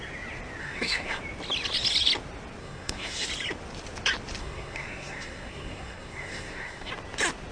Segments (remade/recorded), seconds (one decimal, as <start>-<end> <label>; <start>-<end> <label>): 0.0-0.6 recorded; 0.6-1.2 remade; 1.2-2.6 recorded; 2.6-3.3 remade; 3.3-4.4 recorded; 4.4-6.9 remade; 6.9-7.5 recorded